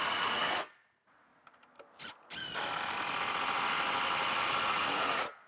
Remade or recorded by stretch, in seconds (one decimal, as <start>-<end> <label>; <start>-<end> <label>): 0.0-1.3 remade; 1.3-4.6 recorded; 4.6-5.5 remade